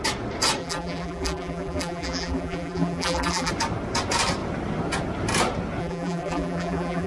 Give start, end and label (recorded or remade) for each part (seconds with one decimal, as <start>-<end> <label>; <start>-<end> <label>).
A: 0.0-0.6 recorded; 0.6-3.5 remade; 3.5-5.8 recorded; 5.8-7.1 remade